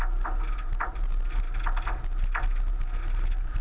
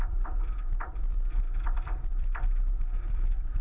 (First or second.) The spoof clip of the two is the second